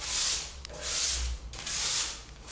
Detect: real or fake real